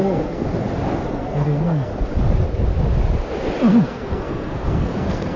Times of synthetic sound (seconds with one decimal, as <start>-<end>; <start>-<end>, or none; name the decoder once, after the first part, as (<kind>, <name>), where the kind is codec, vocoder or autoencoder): 0.0-0.4 (codec, SNAC); 1.1-1.9; 3.7-5.4